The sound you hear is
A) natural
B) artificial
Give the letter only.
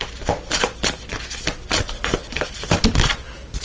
A